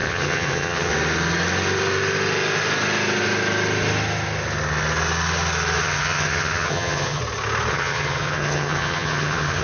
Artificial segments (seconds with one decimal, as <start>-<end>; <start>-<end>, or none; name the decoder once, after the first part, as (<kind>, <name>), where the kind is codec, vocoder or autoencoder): 0.0-0.9 (vocoder, HiFi-GAN); 5.8-7.2; 7.7-9.6